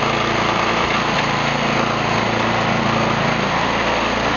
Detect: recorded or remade recorded